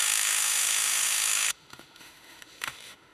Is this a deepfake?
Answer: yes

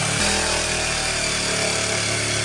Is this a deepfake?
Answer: no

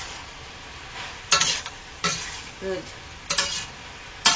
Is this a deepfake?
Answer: no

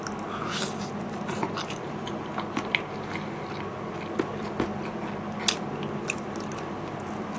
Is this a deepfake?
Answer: no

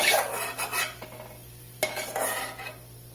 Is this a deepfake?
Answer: no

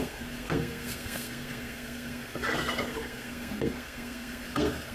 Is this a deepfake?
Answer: yes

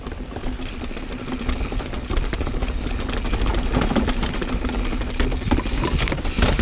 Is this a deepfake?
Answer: no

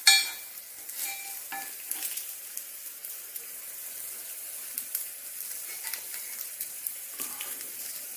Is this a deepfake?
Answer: no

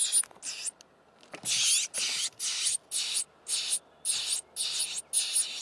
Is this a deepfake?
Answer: no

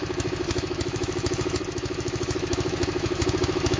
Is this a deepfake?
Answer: yes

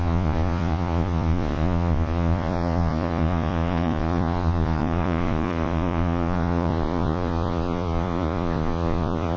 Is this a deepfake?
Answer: yes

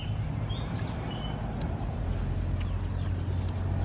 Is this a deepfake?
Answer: no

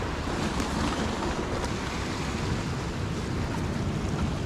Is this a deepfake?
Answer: no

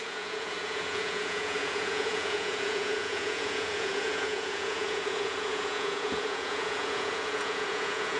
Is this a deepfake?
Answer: yes